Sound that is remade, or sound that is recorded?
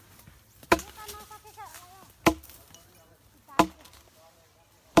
recorded